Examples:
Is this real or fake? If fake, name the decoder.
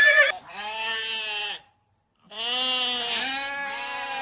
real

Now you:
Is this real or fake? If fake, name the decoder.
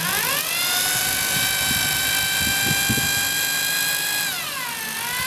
real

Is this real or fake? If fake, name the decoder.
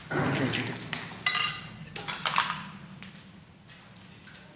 real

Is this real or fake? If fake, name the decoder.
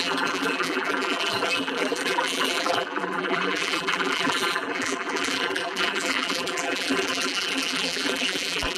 fake, vocoder, BigVGAN v2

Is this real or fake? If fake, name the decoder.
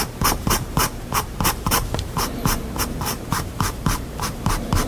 fake, vocoder, BigVGAN v2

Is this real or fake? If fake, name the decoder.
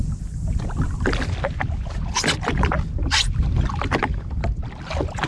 real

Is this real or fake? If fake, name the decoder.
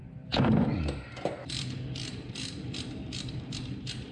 real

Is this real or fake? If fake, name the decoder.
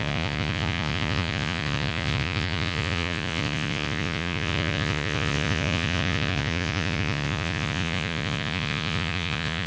fake, vocoder, Vocos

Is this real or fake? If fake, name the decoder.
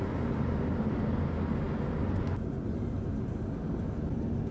real